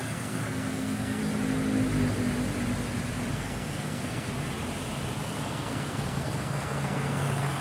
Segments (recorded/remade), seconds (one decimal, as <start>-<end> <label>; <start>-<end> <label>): 0.0-1.2 remade; 1.2-3.3 recorded; 3.3-4.3 remade; 4.3-5.2 recorded; 5.2-7.6 remade